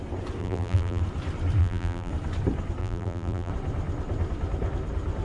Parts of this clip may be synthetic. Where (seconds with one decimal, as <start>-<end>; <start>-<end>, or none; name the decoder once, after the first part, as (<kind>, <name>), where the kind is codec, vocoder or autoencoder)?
0.4-1.0 (vocoder, BigVGAN v2); 1.6-2.1; 2.8-3.5